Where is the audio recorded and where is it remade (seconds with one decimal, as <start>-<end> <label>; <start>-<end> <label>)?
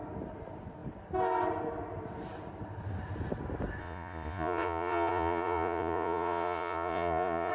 0.0-3.8 recorded; 3.8-7.5 remade